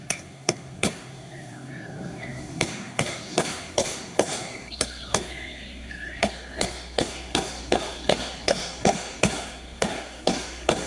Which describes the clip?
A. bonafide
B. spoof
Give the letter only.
B